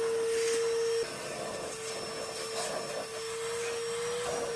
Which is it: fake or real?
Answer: real